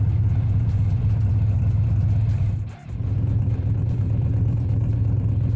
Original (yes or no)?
no